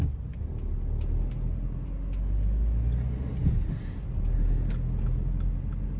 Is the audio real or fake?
real